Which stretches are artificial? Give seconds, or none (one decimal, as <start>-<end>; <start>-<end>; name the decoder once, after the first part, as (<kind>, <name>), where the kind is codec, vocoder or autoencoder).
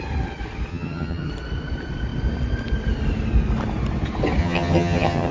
0.7-1.3 (vocoder, HiFi-GAN); 4.4-5.3